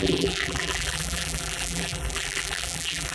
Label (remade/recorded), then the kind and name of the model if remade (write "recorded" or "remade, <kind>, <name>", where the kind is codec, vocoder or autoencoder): remade, vocoder, BigVGAN v2